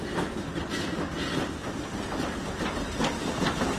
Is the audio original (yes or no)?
yes